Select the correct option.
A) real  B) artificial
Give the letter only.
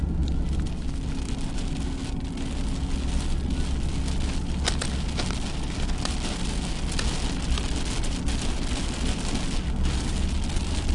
A